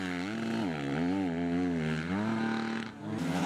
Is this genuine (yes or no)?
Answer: yes